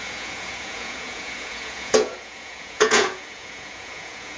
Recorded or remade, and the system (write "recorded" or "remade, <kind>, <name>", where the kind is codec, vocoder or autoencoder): remade, vocoder, Vocos